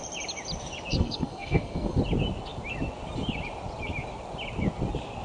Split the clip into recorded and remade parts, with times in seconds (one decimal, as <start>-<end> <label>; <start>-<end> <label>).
0.0-0.9 recorded; 0.9-2.0 remade; 2.0-5.2 recorded